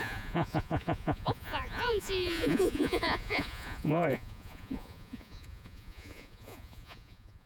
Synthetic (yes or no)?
yes